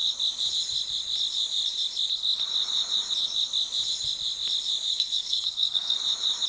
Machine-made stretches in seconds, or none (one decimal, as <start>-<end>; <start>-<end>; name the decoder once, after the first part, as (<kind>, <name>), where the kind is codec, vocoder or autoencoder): 4.9-6.0 (codec, SNAC)